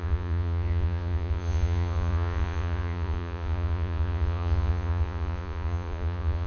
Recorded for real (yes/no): no